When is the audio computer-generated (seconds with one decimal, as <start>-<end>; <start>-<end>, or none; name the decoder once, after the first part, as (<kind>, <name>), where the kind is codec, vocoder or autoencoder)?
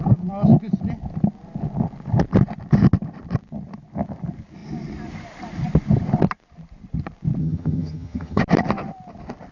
7.4-8.4 (vocoder, HiFi-GAN)